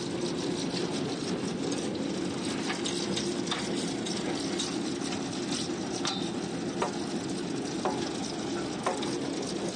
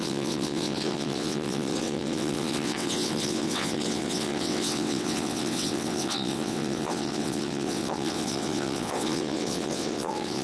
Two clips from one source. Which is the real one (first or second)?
first